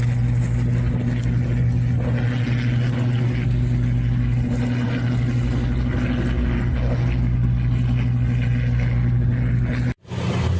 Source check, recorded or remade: recorded